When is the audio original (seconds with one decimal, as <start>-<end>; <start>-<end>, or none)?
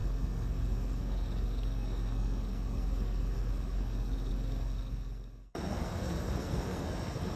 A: none